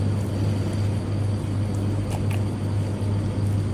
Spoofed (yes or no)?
no